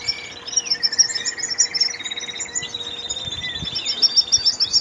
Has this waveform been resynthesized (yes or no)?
no